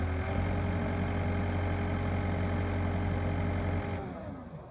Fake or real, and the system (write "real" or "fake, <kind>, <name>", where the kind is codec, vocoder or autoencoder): real